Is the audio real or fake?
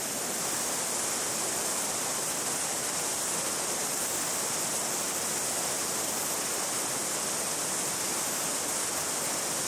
real